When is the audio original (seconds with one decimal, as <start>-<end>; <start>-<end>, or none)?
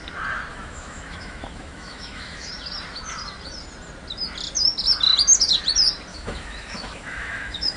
0.0-0.5; 2.5-6.1